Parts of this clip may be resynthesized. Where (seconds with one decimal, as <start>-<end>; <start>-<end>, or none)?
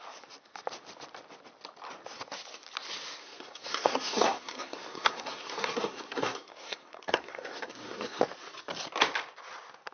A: 3.2-8.2